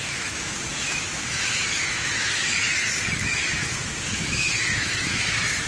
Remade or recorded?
remade